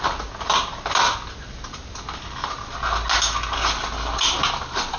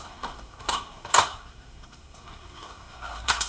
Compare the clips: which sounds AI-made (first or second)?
second